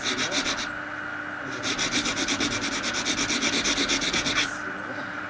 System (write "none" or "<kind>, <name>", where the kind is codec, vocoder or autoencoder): none